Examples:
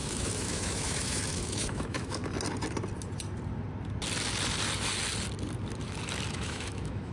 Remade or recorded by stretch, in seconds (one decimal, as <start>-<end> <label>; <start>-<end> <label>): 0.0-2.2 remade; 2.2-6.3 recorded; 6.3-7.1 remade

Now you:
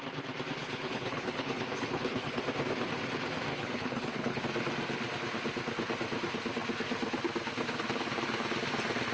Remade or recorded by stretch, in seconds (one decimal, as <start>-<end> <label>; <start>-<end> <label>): 0.0-0.6 recorded; 0.6-2.4 remade; 2.4-3.5 recorded; 3.5-4.4 remade; 4.4-9.1 recorded

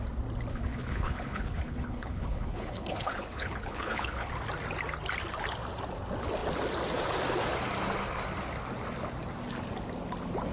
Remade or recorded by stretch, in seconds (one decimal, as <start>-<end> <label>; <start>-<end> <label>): 0.0-0.5 recorded; 0.5-4.3 remade; 4.3-10.5 recorded